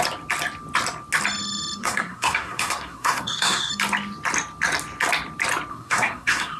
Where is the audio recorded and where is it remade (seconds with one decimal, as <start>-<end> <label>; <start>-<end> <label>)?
0.0-1.8 recorded; 1.8-3.7 remade; 3.7-5.7 recorded; 5.7-6.6 remade